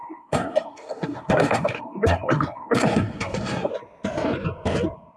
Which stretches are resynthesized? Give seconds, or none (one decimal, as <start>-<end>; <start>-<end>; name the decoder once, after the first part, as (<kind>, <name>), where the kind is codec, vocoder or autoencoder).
0.0-3.7 (codec, SNAC)